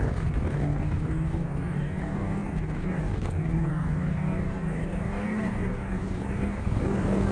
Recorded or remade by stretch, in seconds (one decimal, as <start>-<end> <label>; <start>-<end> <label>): 0.0-7.3 remade